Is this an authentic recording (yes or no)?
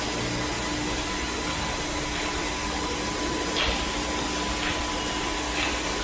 yes